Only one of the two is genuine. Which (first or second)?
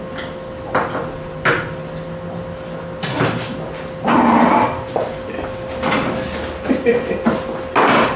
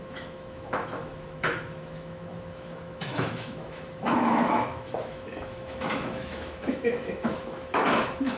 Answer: first